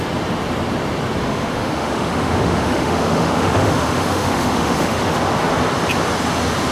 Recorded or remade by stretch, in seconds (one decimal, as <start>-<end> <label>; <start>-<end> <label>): 0.0-1.2 recorded; 1.2-5.2 remade; 5.2-6.7 recorded